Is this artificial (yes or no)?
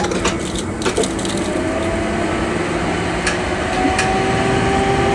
yes